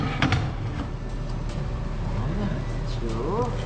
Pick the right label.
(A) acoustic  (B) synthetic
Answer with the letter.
A